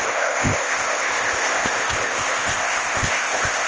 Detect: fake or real fake